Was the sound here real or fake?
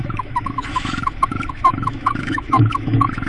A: fake